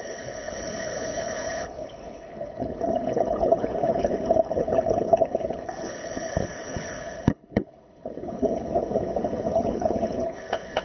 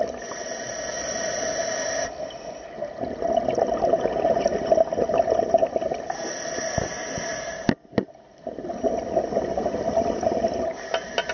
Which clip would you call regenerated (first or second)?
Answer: first